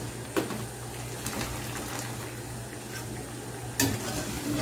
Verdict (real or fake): real